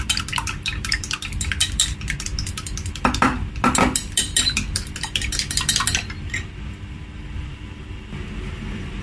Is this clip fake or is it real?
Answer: fake